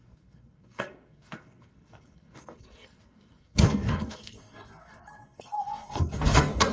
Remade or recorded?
remade